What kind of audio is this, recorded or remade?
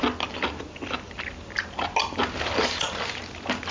recorded